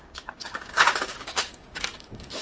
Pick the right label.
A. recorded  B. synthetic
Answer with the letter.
B